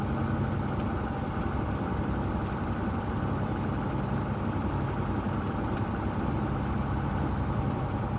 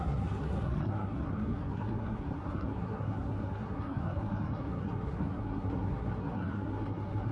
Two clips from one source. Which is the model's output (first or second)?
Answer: second